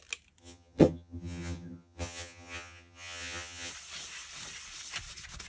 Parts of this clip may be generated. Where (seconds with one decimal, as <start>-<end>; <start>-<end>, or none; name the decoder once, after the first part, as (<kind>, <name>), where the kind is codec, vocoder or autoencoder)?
0.4-3.7 (vocoder, HiFi-GAN)